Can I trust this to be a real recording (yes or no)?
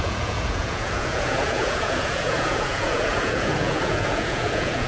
no